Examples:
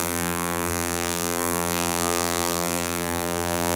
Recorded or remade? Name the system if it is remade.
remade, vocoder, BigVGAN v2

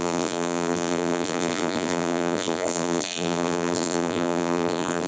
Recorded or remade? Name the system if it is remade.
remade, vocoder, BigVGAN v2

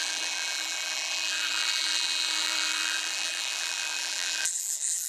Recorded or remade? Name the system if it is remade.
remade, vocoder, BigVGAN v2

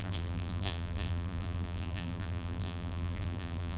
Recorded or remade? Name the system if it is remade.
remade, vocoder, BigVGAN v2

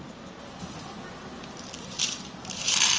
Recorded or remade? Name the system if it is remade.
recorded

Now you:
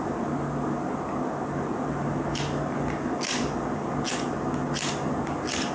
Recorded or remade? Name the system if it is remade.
recorded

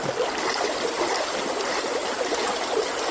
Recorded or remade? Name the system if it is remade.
recorded